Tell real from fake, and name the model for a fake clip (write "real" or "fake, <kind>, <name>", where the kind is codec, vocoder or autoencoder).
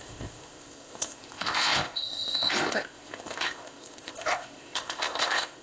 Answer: fake, codec, ZipCodec